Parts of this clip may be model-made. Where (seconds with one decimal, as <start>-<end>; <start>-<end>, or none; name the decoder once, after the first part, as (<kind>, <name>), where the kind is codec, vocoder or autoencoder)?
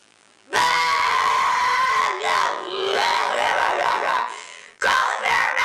0.0-1.3 (vocoder, BigVGAN v2); 2.0-5.6